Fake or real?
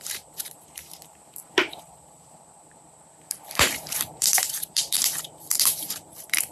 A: fake